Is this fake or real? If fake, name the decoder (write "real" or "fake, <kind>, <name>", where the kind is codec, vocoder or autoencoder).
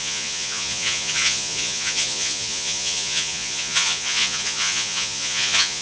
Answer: fake, vocoder, Vocos